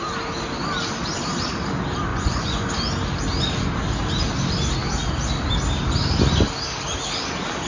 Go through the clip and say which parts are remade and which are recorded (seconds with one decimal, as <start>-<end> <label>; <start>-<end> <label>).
0.0-2.1 recorded; 2.1-2.7 remade; 2.7-7.7 recorded